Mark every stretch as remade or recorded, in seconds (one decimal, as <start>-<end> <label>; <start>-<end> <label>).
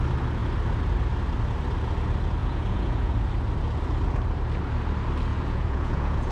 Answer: 0.0-2.4 recorded; 2.4-3.1 remade; 3.1-5.3 recorded; 5.3-6.3 remade